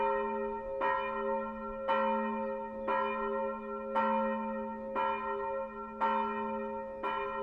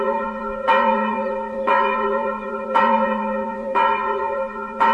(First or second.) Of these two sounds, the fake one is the second